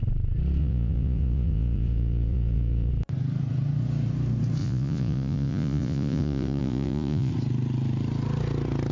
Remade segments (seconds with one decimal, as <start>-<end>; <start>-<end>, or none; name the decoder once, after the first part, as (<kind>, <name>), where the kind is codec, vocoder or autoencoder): 0.6-2.9 (vocoder, Vocos); 4.6-7.3